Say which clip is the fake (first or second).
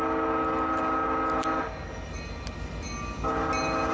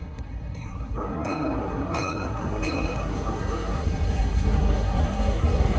second